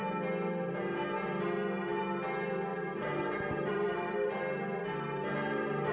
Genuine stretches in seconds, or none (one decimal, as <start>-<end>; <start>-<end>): 0.0-2.7; 4.4-5.9